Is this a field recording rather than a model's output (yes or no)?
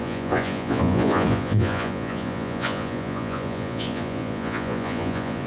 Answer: no